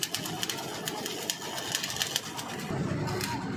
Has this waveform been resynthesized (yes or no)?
no